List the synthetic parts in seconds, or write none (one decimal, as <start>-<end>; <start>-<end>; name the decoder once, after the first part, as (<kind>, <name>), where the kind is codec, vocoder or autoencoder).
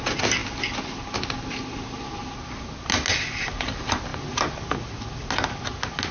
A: none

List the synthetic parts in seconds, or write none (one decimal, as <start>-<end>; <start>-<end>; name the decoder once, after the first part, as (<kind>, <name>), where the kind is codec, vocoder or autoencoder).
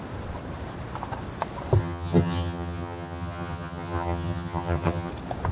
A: 1.8-5.1 (vocoder, HiFi-GAN)